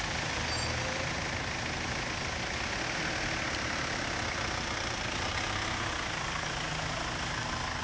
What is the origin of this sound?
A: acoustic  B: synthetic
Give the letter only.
A